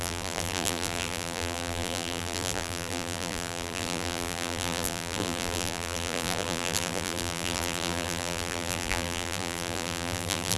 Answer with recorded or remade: remade